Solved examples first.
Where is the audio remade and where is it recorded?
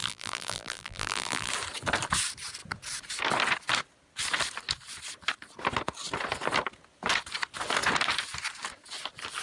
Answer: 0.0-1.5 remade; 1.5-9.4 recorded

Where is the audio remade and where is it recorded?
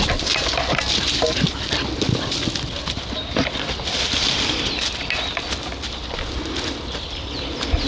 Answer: 0.0-7.9 recorded